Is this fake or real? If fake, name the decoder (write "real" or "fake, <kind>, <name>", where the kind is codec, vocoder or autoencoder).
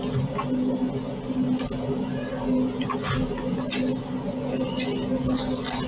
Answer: real